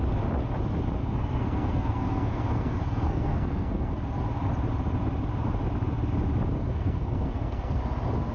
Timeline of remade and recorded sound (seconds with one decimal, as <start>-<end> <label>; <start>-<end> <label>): 0.0-1.0 recorded; 1.0-3.9 remade; 3.9-6.6 recorded; 6.6-7.8 remade; 7.8-8.3 recorded